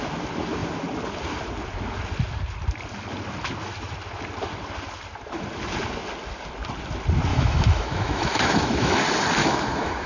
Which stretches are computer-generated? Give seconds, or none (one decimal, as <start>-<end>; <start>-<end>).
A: 7.3-9.0; 9.4-10.1